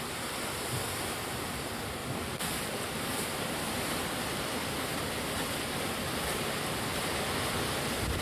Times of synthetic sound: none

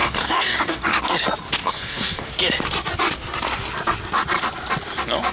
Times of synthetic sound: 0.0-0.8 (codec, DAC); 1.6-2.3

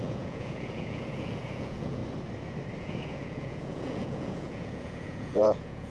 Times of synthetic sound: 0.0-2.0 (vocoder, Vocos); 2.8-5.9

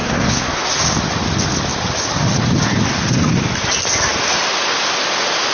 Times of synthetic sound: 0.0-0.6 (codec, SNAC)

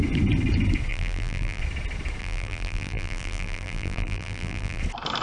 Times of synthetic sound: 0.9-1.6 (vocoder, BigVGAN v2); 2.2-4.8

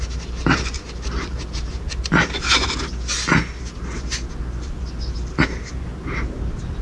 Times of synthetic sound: 0.0-2.5 (vocoder, BigVGAN v2); 5.3-5.9

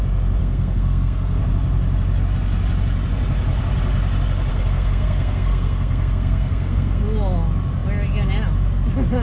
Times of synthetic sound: 0.4-1.4 (codec, SNAC); 4.5-7.0

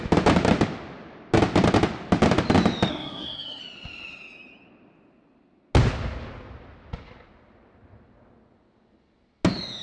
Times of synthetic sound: 2.9-3.6 (codec, SNAC)